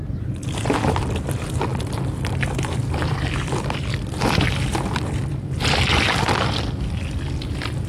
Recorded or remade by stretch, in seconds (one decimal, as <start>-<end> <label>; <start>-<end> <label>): 0.0-1.7 recorded; 1.7-5.8 remade; 5.8-7.9 recorded